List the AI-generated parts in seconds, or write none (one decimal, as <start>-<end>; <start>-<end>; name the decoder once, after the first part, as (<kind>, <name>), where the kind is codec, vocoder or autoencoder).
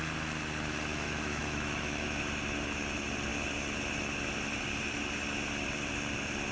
0.9-2.2 (autoencoder, DAC-VAE)